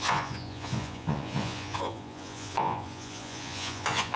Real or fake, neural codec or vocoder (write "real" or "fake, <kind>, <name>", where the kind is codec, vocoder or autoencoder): fake, vocoder, Vocos